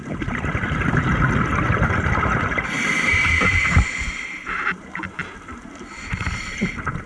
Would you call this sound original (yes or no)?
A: no